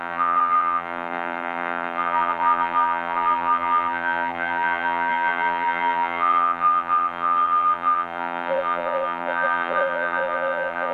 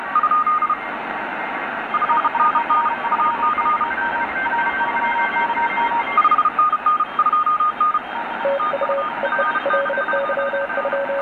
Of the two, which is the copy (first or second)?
first